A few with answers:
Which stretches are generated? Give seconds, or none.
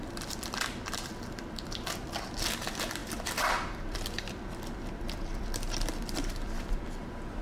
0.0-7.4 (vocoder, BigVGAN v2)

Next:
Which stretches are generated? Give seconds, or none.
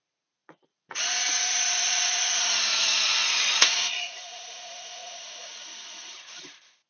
0.0-6.9 (vocoder, Vocos)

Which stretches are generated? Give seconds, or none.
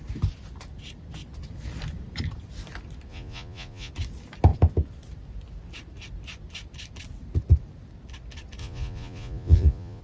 3.1-3.9 (vocoder, Vocos); 8.6-10.0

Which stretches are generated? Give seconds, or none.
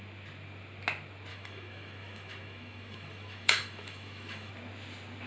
1.3-4.5 (autoencoder, DAC-VAE)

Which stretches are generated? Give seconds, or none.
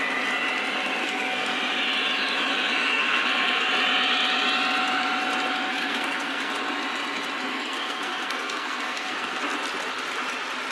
1.0-1.5 (codec, SNAC); 2.5-3.7; 5.7-6.5; 7.5-9.4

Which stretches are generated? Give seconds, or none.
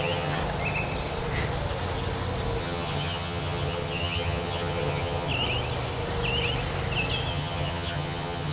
0.0-0.4 (vocoder, HiFi-GAN); 2.6-5.3; 7.3-8.5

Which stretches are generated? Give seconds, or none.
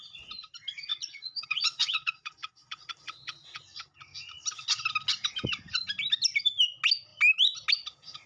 0.9-3.6 (vocoder, Vocos)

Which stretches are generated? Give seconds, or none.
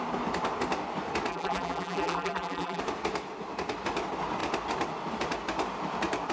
1.3-2.8 (vocoder, BigVGAN v2)